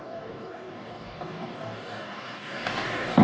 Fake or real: fake